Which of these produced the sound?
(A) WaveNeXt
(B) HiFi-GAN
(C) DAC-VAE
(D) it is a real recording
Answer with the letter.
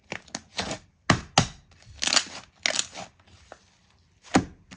D